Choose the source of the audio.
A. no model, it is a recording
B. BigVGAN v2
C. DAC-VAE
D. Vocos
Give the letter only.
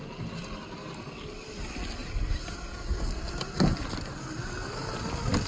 A